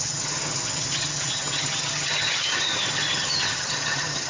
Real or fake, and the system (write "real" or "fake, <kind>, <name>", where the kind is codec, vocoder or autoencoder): fake, vocoder, HiFi-GAN